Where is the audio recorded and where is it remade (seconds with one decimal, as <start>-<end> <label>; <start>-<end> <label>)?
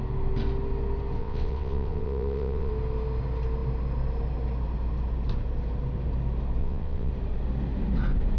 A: 0.0-1.2 recorded; 1.2-2.7 remade; 2.7-6.6 recorded; 6.6-7.1 remade; 7.1-8.4 recorded